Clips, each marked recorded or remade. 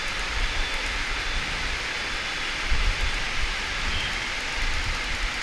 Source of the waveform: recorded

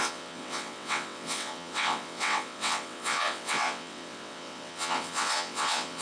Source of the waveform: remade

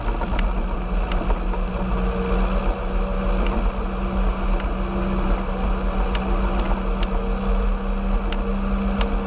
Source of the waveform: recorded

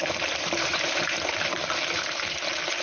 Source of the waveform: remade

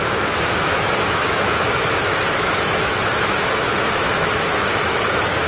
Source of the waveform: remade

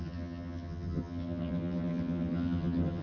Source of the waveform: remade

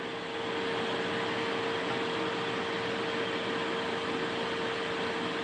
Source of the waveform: recorded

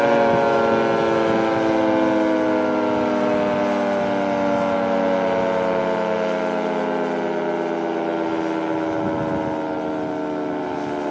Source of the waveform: recorded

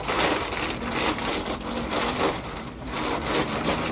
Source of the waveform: recorded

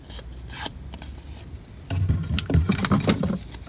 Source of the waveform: recorded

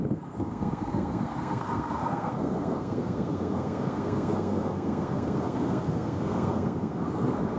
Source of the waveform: remade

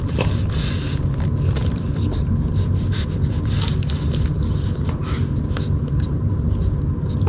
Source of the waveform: recorded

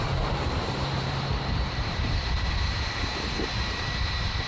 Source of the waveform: remade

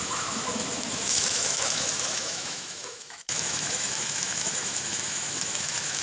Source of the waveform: remade